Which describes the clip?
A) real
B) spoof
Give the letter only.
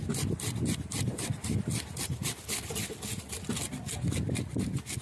A